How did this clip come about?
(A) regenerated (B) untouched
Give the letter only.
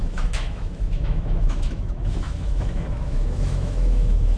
A